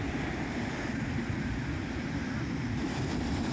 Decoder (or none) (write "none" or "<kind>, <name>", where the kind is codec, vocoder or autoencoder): none